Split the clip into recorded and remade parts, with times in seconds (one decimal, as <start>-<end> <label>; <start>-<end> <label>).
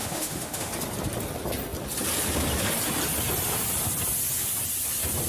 0.0-0.7 remade; 0.7-5.3 recorded